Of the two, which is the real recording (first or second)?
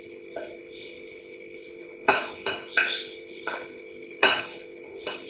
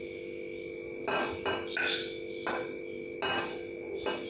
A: second